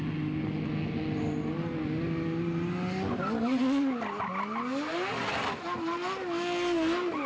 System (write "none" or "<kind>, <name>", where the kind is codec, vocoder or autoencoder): none